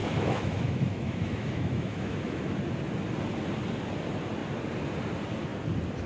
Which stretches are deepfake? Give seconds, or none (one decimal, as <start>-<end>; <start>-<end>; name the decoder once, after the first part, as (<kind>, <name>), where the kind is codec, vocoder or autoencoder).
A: 0.0-2.5 (autoencoder, DAC-VAE)

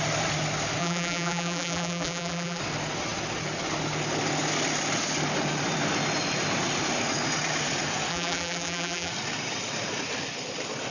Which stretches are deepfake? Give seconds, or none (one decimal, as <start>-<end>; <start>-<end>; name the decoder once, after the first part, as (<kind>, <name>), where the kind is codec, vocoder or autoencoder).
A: 0.8-2.6 (vocoder, BigVGAN v2); 8.1-9.1